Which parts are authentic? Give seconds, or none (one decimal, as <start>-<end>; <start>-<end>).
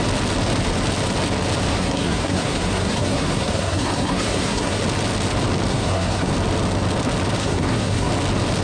0.0-1.7; 4.8-5.7; 6.3-7.4; 8.1-8.6